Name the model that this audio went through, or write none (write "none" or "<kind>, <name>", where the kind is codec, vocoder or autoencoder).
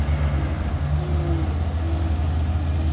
none